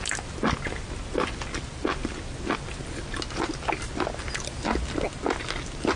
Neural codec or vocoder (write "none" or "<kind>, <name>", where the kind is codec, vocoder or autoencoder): none